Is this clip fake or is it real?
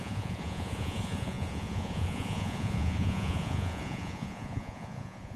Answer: fake